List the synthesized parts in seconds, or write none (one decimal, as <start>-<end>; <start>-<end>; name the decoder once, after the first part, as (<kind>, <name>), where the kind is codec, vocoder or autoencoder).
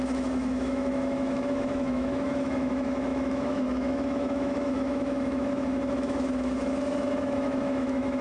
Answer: 0.0-8.2 (autoencoder, DAC-VAE)